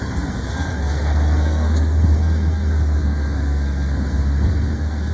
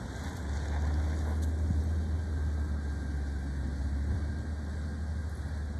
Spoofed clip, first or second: first